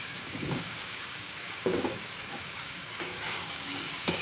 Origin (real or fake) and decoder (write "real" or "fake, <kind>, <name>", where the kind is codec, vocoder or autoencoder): fake, codec, DAC